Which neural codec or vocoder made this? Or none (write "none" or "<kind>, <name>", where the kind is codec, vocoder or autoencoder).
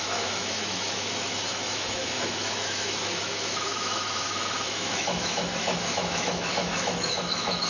autoencoder, DAC-VAE